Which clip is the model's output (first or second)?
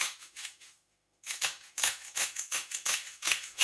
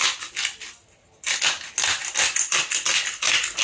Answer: first